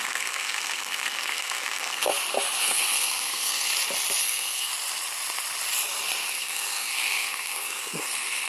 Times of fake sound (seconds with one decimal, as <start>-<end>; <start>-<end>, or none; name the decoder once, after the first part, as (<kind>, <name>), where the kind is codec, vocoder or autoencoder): 0.0-2.1 (codec, SNAC); 2.6-3.7; 4.2-4.7; 6.3-8.5